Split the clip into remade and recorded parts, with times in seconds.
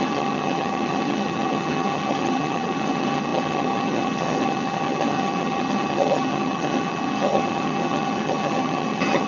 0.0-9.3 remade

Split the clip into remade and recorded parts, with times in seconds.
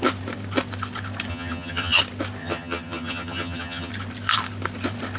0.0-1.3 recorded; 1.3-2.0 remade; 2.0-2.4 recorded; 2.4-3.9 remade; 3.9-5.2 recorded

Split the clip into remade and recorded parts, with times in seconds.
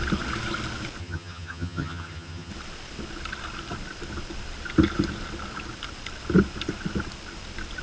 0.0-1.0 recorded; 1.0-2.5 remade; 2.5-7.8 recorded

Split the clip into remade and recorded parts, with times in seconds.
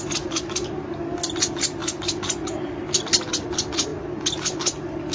0.0-5.1 recorded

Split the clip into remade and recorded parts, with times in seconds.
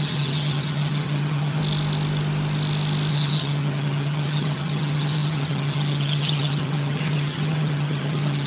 0.0-1.6 remade; 1.6-3.1 recorded; 3.1-8.5 remade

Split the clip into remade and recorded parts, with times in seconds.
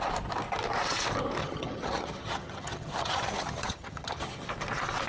0.0-1.4 recorded; 1.4-4.5 remade; 4.5-5.1 recorded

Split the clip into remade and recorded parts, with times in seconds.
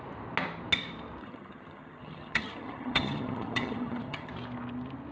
0.0-1.2 recorded; 1.2-4.3 remade; 4.3-5.1 recorded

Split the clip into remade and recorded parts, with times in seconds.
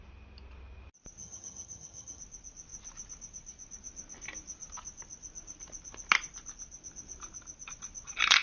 0.0-1.2 recorded; 1.2-2.2 remade; 2.2-8.4 recorded